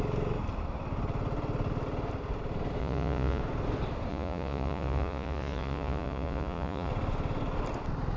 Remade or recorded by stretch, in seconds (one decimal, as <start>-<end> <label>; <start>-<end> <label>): 0.0-2.8 recorded; 2.8-3.4 remade; 3.4-4.1 recorded; 4.1-6.9 remade; 6.9-8.2 recorded